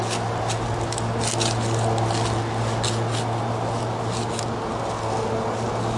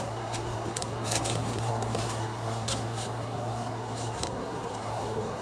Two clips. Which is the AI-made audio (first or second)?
second